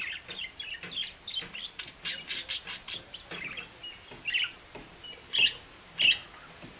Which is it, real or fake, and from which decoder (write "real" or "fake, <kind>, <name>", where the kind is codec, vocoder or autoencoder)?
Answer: real